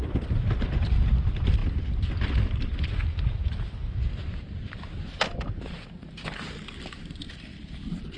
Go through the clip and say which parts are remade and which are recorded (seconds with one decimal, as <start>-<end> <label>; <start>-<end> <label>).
0.0-8.2 recorded